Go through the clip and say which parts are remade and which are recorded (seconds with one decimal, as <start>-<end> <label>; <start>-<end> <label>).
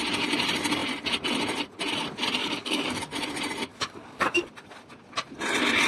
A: 0.0-2.4 recorded; 2.4-3.0 remade; 3.0-3.7 recorded; 3.7-4.5 remade; 4.5-5.9 recorded